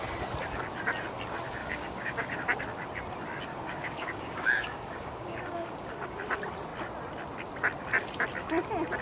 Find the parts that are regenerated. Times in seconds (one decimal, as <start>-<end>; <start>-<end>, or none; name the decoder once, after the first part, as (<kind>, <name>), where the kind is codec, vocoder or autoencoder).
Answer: 1.6-2.6 (codec, DAC); 3.5-6.0